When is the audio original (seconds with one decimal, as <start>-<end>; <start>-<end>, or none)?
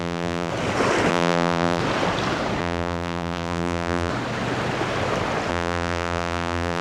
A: 0.5-1.1; 1.8-2.6; 4.1-5.5